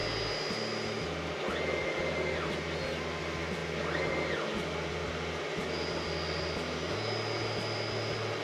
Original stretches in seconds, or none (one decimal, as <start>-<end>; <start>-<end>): 0.0-8.4